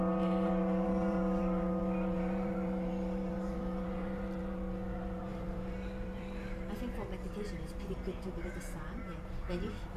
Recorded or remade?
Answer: remade